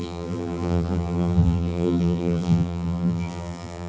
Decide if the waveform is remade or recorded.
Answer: remade